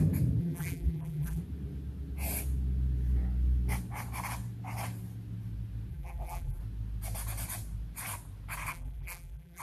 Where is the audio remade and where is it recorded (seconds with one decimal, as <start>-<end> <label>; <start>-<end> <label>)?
0.0-0.4 recorded; 0.4-1.4 remade; 1.4-5.9 recorded; 5.9-6.6 remade; 6.6-8.7 recorded; 8.7-9.6 remade